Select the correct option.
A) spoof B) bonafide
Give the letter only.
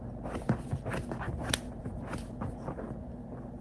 B